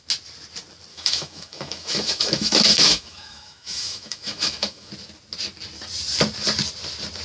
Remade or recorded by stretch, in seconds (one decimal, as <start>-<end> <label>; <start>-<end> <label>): 0.0-0.9 recorded; 0.9-4.9 remade; 4.9-7.2 recorded